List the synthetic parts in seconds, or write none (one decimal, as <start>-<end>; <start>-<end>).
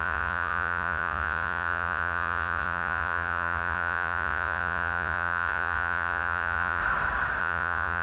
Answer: 0.0-6.8; 7.4-8.0